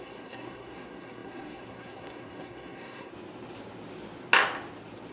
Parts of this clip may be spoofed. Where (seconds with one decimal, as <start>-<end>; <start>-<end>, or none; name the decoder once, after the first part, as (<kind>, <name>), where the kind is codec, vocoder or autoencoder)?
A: 0.0-3.1 (codec, SNAC)